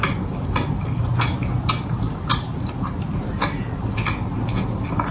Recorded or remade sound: recorded